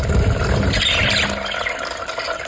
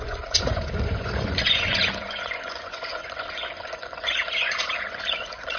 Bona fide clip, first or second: first